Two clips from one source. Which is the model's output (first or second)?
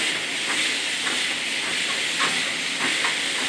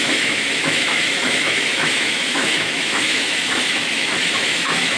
second